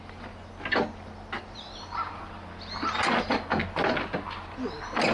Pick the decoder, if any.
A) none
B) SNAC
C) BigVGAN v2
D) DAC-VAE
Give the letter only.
A